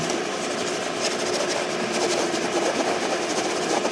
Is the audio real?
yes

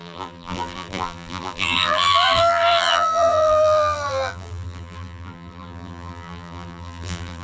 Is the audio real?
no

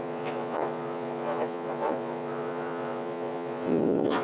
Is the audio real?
no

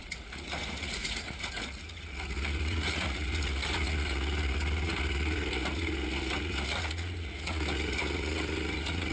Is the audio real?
no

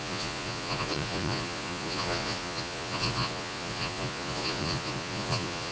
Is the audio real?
no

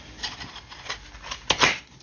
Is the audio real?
yes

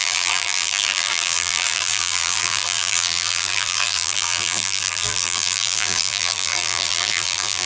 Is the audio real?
no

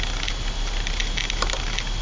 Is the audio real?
yes